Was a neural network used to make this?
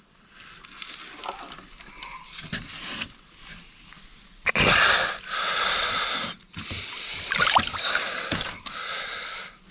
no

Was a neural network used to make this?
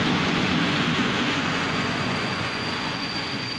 yes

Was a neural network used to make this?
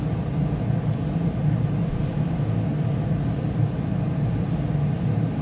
no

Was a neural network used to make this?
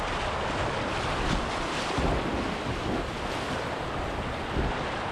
no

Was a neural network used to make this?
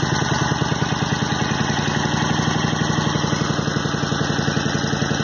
no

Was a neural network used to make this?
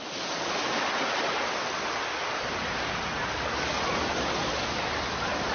no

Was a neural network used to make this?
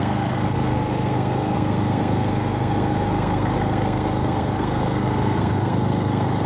yes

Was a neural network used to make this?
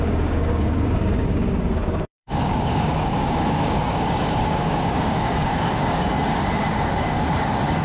yes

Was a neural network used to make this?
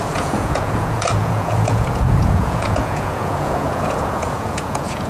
yes